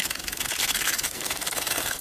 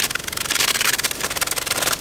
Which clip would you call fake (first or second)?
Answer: first